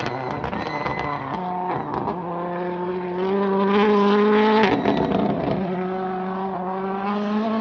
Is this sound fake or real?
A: real